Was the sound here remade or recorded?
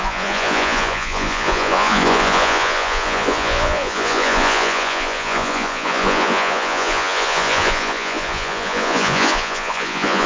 remade